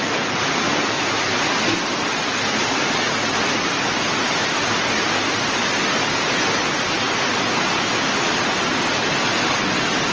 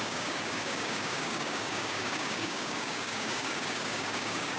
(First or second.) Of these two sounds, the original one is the first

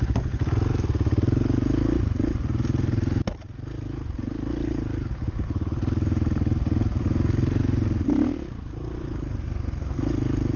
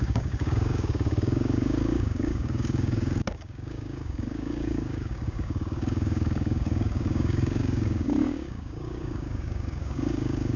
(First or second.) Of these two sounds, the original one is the first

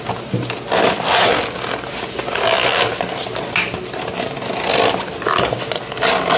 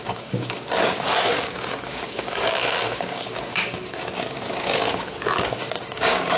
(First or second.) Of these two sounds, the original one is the first